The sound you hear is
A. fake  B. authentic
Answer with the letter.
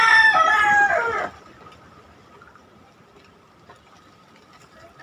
A